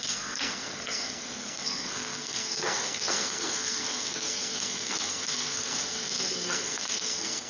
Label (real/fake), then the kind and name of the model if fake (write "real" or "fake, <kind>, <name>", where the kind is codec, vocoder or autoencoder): fake, codec, SNAC